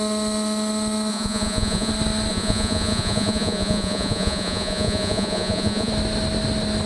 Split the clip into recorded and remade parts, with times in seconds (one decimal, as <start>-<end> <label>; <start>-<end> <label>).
0.0-1.1 recorded; 1.1-1.9 remade; 1.9-2.3 recorded; 2.3-5.9 remade; 5.9-6.9 recorded